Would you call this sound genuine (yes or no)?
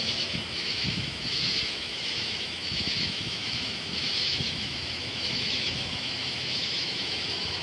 no